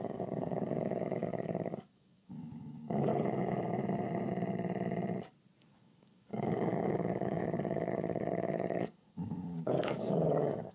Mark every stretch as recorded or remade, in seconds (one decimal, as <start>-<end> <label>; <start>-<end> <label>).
0.0-3.1 remade; 3.1-5.6 recorded; 5.6-10.7 remade